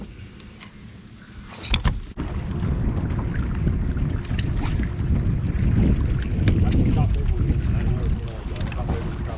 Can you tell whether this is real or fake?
real